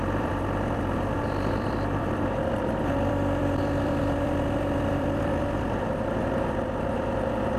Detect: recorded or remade remade